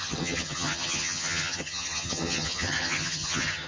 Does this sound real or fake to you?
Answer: fake